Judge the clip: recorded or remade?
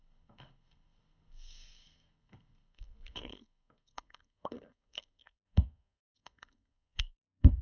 remade